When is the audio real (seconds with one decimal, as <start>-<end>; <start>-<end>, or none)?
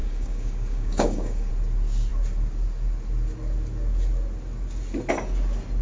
1.5-5.8